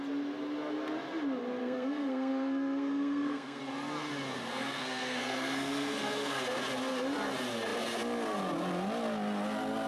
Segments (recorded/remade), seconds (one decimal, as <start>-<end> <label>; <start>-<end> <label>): 0.0-1.6 recorded; 1.6-3.6 remade; 3.6-4.5 recorded; 4.5-6.4 remade; 6.4-9.9 recorded